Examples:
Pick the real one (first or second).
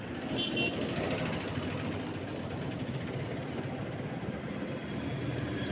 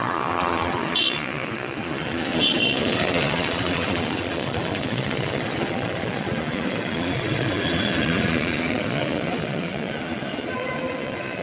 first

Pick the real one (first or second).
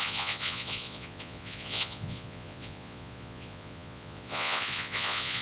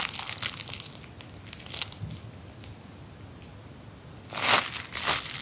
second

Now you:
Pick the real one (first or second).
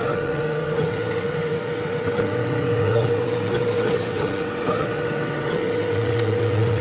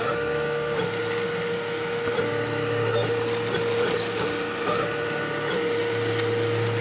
second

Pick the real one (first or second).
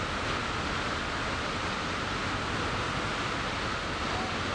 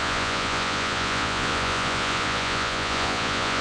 first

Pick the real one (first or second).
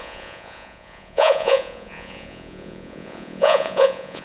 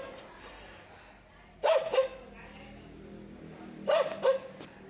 second